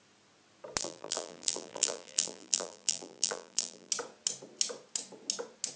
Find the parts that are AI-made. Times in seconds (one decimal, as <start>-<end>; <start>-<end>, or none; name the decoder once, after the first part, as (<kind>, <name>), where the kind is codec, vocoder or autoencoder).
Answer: 0.8-3.9 (vocoder, BigVGAN v2)